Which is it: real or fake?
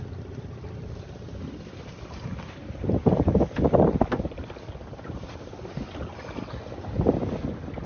real